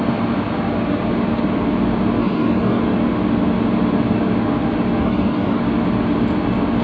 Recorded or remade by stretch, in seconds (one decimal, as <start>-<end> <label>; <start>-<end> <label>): 0.0-2.2 recorded; 2.2-2.8 remade; 2.8-5.0 recorded; 5.0-5.6 remade; 5.6-6.8 recorded

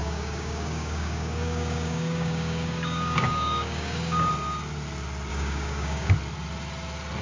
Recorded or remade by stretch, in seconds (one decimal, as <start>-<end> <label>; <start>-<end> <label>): 0.0-4.3 remade; 4.3-5.3 recorded; 5.3-6.1 remade; 6.1-7.2 recorded

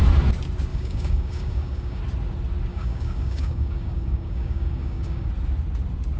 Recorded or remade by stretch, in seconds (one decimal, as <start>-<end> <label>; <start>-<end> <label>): 0.0-0.7 recorded; 0.7-2.0 remade; 2.0-2.7 recorded; 2.7-5.3 remade; 5.3-6.2 recorded

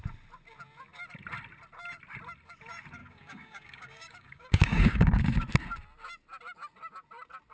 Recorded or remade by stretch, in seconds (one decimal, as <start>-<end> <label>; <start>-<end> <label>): 0.0-3.0 recorded; 3.0-5.2 remade; 5.2-7.5 recorded